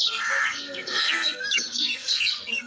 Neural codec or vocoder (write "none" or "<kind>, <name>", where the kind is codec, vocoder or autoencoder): codec, SNAC